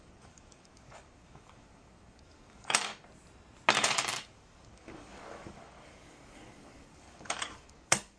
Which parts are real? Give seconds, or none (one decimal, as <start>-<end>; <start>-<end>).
2.9-3.7

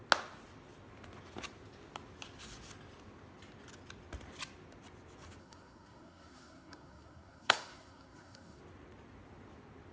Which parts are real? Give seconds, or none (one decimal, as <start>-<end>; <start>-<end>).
0.0-5.4; 8.6-9.9

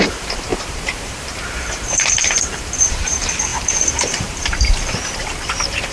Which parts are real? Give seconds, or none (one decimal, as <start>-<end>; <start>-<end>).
none

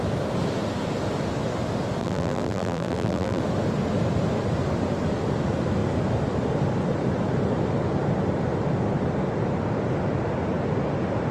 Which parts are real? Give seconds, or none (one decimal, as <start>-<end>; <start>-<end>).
0.0-2.0; 3.4-11.3